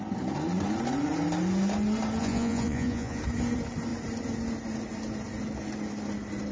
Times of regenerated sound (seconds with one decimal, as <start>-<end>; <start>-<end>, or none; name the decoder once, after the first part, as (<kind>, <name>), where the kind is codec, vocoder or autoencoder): 2.2-3.2 (vocoder, Vocos)